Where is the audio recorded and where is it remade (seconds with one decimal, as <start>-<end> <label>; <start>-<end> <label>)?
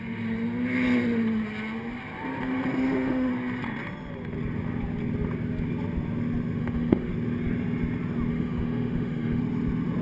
0.0-2.8 recorded; 2.8-3.3 remade; 3.3-6.6 recorded; 6.6-7.1 remade; 7.1-8.3 recorded; 8.3-9.4 remade; 9.4-10.0 recorded